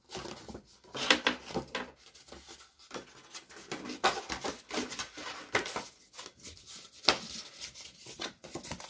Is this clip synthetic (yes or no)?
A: no